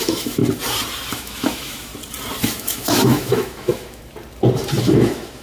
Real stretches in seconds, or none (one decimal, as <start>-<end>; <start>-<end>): 0.4-1.1; 1.9-2.5; 4.0-4.8

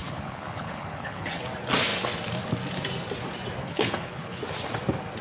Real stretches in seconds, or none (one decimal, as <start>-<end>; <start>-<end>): 1.4-3.6; 4.4-5.2